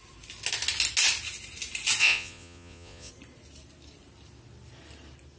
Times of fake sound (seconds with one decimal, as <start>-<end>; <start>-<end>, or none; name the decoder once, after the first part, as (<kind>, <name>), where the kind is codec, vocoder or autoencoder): 2.0-3.1 (vocoder, Vocos)